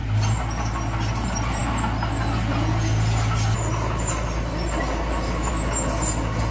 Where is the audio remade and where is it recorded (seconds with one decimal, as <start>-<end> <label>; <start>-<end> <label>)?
0.0-6.5 recorded